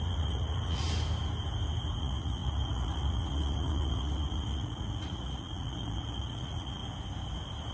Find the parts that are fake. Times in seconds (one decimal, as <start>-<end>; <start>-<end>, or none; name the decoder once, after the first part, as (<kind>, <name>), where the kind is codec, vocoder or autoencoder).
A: 0.0-0.8 (vocoder, Vocos); 2.0-6.8